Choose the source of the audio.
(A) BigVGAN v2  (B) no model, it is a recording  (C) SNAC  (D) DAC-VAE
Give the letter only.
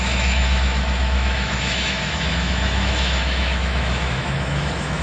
D